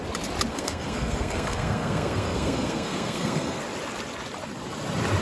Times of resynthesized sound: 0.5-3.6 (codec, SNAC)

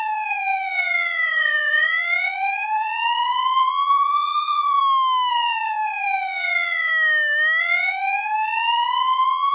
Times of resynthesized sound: 0.0-4.8 (vocoder, Vocos); 5.3-6.9; 7.6-9.5